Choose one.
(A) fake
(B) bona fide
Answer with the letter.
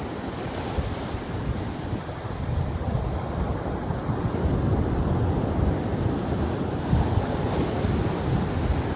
B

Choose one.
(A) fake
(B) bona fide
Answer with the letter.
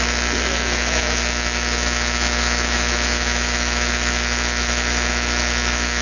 A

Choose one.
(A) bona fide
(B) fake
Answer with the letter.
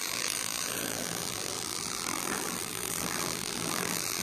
B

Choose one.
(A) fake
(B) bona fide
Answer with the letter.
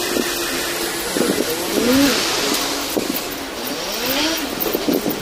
B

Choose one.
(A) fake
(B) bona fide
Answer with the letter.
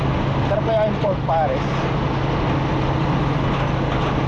B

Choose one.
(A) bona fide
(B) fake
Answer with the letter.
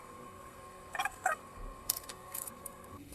B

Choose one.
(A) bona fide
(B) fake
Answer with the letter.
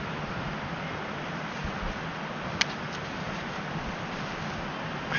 A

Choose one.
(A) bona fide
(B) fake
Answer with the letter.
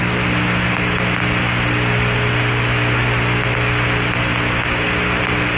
A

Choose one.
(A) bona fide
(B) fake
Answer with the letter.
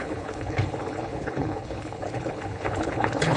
B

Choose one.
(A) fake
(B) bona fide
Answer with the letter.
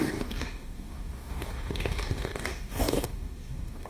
A